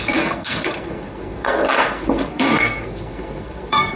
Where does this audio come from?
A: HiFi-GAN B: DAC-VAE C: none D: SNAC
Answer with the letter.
D